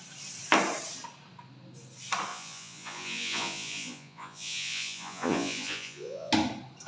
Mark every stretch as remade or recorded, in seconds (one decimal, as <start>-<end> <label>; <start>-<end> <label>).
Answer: 0.0-2.3 recorded; 2.3-6.3 remade; 6.3-6.9 recorded